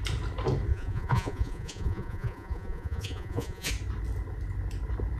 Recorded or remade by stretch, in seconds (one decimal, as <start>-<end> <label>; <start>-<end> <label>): 0.0-0.7 recorded; 0.7-3.7 remade; 3.7-5.2 recorded